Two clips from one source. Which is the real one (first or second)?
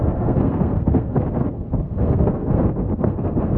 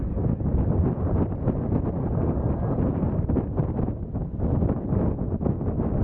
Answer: second